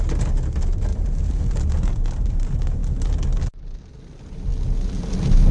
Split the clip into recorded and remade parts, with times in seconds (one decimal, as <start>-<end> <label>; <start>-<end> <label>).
0.0-0.9 recorded; 0.9-1.5 remade; 1.5-5.5 recorded